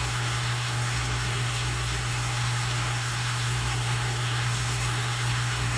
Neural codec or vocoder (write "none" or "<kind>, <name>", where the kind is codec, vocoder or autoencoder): codec, SNAC